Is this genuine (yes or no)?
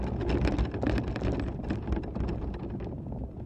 yes